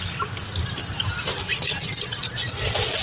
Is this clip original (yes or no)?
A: yes